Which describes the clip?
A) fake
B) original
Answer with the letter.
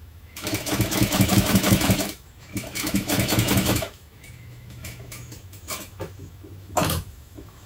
A